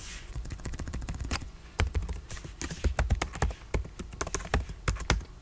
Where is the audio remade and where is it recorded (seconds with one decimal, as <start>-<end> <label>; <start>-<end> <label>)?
0.0-2.0 remade; 2.0-5.4 recorded